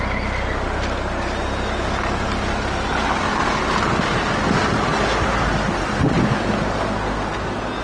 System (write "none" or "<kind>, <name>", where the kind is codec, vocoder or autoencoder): none